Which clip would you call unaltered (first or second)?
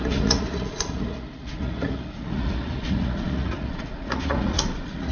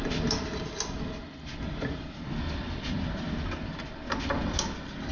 second